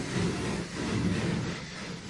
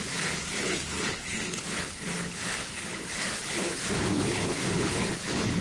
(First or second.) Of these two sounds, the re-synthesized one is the second